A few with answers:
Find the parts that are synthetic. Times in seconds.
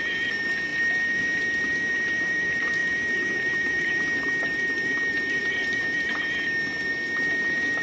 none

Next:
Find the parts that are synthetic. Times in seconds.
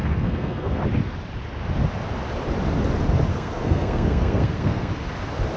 0.0-0.8 (codec, SNAC); 3.3-4.9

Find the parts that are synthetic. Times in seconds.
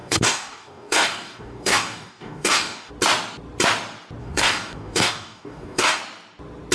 0.0-2.9 (codec, DAC); 4.2-6.0